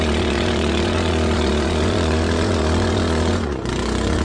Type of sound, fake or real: fake